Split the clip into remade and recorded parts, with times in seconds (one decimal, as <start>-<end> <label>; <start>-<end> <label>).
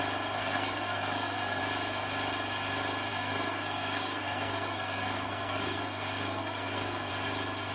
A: 0.0-0.4 recorded; 0.4-1.6 remade; 1.6-3.1 recorded; 3.1-7.1 remade; 7.1-7.7 recorded